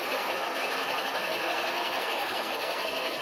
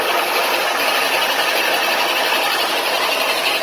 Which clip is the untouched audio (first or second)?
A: second